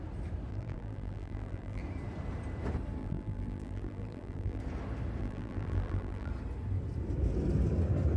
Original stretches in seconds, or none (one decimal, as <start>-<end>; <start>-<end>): 0.0-0.5; 1.8-3.0; 4.6-5.2; 6.3-8.2